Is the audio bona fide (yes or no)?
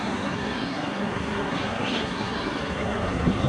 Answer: no